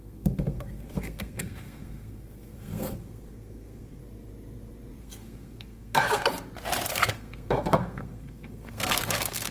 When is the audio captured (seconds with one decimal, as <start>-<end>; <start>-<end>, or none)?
4.0-5.0; 6.3-6.9